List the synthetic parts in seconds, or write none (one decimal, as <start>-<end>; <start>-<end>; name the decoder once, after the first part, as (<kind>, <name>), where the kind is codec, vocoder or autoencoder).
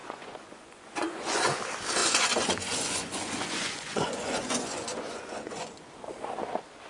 0.0-1.6 (vocoder, Vocos); 2.0-5.8